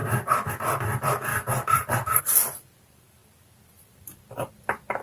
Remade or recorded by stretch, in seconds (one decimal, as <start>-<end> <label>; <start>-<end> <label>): 0.0-0.5 recorded; 0.5-5.0 remade